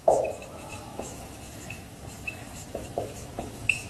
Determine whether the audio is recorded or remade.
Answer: remade